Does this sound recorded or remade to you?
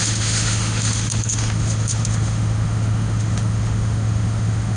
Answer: remade